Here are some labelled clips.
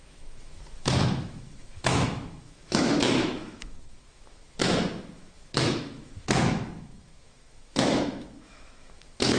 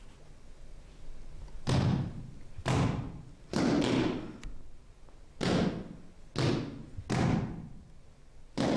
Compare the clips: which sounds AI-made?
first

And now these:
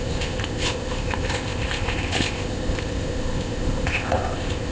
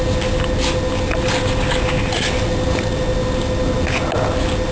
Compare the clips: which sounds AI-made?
first